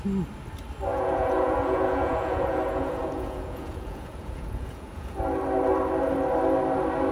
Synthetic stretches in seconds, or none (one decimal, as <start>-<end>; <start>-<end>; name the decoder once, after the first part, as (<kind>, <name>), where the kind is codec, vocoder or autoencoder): 0.9-5.2 (vocoder, Vocos)